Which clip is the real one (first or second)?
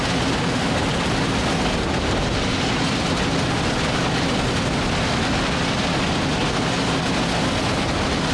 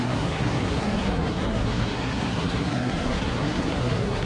first